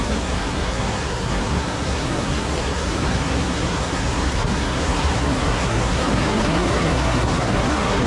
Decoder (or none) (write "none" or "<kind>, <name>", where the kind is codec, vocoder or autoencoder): codec, SNAC